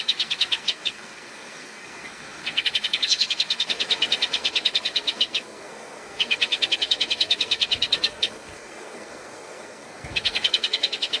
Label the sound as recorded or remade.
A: remade